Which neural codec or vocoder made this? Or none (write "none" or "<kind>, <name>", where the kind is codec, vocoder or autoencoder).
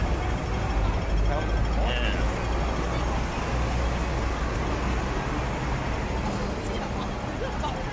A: none